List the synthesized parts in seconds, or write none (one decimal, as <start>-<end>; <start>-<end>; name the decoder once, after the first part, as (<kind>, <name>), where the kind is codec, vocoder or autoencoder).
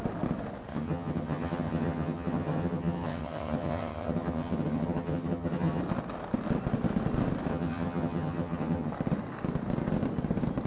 0.7-5.8 (vocoder, HiFi-GAN); 7.5-8.9